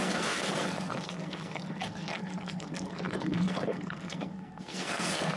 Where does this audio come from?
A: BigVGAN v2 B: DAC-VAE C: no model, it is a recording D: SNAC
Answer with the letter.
D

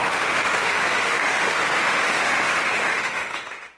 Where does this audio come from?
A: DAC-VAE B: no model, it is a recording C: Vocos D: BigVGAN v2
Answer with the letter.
A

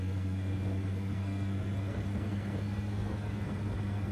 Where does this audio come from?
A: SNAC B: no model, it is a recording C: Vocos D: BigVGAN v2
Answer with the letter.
A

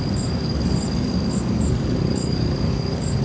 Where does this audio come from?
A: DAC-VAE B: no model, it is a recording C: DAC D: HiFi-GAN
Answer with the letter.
C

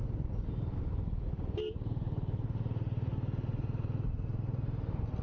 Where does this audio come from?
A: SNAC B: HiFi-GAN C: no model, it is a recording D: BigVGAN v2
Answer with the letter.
C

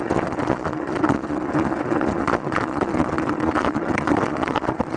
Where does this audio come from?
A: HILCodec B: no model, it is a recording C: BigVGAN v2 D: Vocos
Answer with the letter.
D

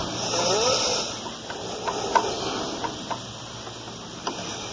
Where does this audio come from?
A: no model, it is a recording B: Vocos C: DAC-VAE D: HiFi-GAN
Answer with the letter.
A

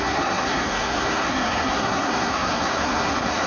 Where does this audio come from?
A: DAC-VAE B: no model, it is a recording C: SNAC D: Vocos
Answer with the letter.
C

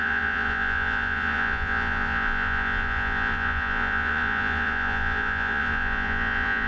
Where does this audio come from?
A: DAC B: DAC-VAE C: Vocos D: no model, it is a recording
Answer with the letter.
C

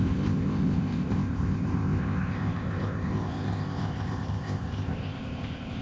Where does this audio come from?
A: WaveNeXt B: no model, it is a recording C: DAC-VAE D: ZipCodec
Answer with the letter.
D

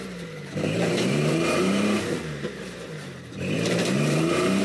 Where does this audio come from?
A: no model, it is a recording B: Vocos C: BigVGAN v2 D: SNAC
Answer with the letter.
C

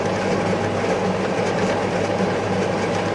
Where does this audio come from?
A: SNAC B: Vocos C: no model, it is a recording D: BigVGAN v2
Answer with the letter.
C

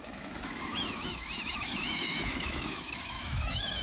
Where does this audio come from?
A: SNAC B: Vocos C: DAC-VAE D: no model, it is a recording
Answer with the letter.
C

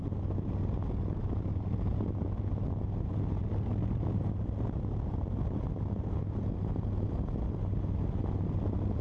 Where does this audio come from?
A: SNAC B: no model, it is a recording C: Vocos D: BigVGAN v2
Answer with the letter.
B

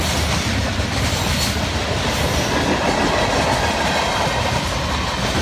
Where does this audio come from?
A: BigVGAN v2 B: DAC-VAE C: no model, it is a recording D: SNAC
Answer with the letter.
C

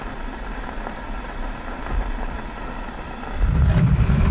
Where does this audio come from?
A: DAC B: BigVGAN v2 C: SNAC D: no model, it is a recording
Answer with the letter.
D